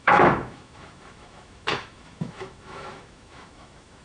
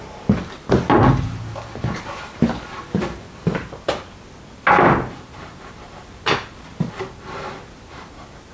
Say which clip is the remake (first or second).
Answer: first